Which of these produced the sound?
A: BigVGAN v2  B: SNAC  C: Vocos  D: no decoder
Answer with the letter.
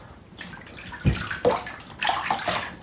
D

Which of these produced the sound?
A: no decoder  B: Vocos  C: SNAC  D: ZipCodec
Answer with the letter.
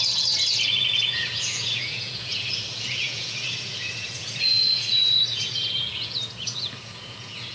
B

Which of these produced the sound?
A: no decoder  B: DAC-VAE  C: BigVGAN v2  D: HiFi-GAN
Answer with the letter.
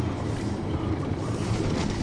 C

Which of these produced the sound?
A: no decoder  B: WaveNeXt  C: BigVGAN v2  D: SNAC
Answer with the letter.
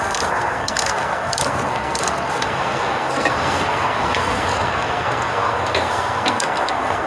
D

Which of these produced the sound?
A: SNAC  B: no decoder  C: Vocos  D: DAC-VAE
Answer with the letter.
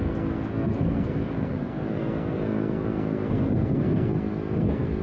A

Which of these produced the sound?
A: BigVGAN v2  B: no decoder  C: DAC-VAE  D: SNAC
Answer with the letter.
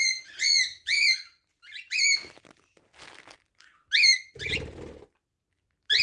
B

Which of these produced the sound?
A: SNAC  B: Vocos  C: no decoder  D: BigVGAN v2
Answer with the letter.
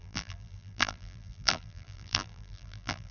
D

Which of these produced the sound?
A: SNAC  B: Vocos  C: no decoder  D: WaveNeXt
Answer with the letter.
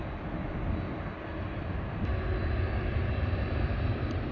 C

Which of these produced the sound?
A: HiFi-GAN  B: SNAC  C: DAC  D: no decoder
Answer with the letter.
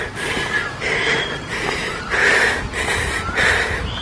D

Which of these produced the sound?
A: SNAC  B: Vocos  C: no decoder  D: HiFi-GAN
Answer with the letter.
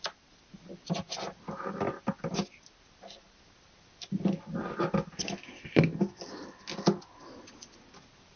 C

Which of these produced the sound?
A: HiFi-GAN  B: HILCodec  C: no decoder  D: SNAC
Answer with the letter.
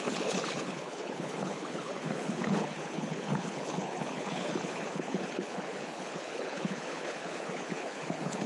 B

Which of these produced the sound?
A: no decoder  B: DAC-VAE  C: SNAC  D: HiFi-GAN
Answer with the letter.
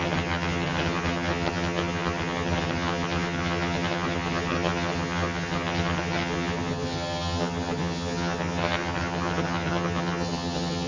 D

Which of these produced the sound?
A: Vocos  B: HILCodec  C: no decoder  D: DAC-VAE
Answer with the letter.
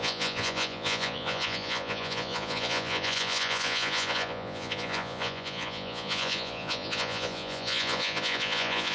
A